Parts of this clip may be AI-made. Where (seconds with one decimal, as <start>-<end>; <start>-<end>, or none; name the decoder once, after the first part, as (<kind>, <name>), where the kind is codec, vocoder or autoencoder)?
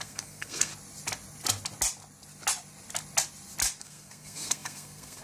0.0-0.7 (codec, SNAC); 3.8-5.2